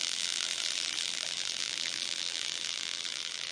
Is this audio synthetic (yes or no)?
yes